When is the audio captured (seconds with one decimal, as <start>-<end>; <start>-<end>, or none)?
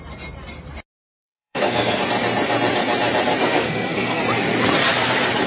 0.0-1.2; 2.0-3.4; 4.2-5.5